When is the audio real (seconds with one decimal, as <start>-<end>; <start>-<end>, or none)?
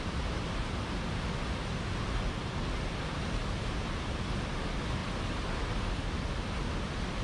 0.0-7.2